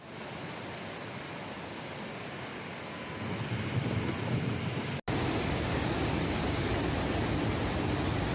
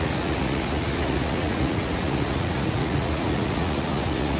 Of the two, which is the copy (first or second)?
second